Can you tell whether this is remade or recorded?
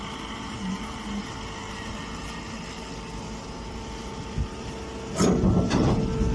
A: recorded